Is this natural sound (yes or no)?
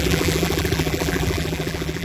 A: no